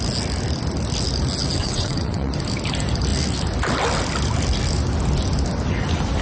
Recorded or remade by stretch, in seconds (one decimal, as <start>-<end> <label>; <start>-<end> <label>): 0.0-1.6 recorded; 1.6-2.3 remade; 2.3-6.2 recorded